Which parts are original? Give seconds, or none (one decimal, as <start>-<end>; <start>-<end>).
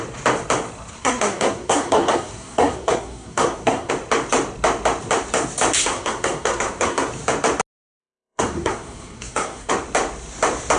0.0-0.9; 3.9-5.8; 7.1-8.0; 9.7-10.8